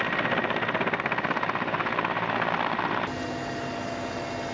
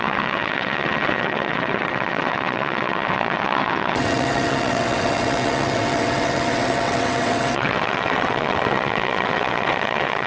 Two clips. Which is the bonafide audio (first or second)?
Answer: first